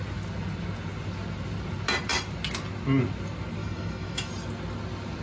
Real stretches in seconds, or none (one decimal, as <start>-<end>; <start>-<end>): 0.0-3.6; 4.3-5.2

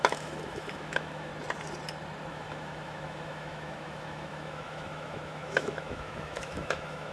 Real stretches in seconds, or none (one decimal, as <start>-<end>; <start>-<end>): 1.3-2.3

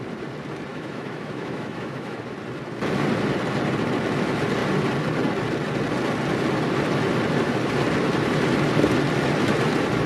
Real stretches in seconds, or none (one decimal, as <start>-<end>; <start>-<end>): 0.0-0.7; 2.2-10.1

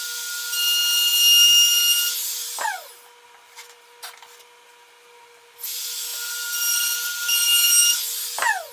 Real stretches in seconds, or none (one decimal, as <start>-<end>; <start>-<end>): 0.0-8.7

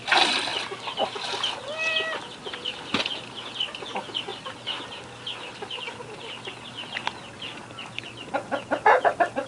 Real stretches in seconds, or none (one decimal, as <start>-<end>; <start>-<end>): 0.0-9.5

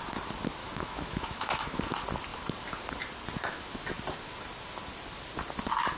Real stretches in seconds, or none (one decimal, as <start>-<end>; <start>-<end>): 0.0-0.6; 1.8-6.0